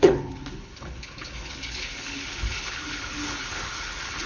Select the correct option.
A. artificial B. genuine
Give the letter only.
A